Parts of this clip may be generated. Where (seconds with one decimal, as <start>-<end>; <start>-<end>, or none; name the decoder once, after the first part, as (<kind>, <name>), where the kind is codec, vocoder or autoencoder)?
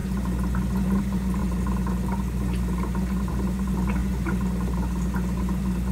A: none